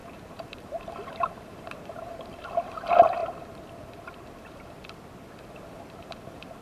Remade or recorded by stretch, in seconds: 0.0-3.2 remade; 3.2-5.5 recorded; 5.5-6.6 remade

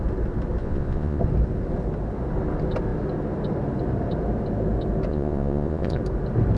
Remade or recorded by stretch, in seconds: 0.0-0.6 recorded; 0.6-1.2 remade; 1.2-5.1 recorded; 5.1-6.0 remade; 6.0-6.6 recorded

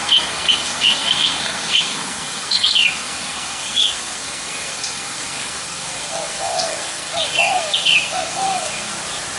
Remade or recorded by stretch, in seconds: 0.0-8.9 remade; 8.9-9.4 recorded

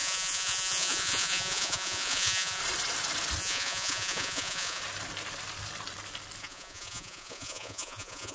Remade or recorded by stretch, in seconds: 0.0-2.6 remade; 2.6-3.4 recorded; 3.4-4.8 remade; 4.8-6.4 recorded; 6.4-8.3 remade

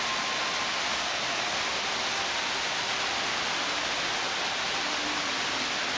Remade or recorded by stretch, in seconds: 0.0-6.0 recorded